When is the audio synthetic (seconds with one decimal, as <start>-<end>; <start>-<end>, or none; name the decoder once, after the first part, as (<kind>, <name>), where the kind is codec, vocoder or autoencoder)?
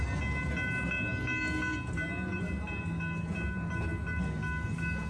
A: none